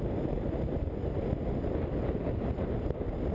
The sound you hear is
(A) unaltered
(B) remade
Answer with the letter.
A